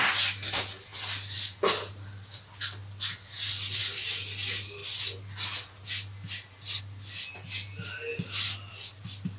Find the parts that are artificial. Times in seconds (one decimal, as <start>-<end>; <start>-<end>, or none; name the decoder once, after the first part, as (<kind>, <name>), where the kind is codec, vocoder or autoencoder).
none